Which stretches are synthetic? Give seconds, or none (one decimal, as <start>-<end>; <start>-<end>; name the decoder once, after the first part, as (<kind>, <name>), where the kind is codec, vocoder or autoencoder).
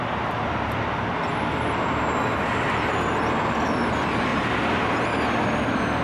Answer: 4.3-4.8 (vocoder, BigVGAN v2)